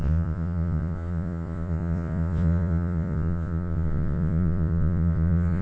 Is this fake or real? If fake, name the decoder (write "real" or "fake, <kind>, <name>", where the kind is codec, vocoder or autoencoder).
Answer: fake, vocoder, Vocos